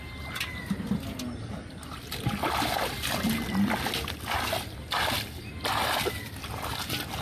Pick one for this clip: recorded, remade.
recorded